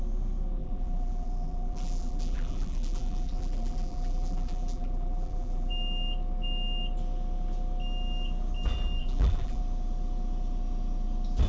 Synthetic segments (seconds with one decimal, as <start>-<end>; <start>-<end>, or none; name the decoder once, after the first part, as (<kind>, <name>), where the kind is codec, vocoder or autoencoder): 0.6-5.7 (vocoder, BigVGAN v2); 9.0-9.6